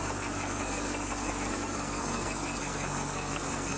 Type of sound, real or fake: fake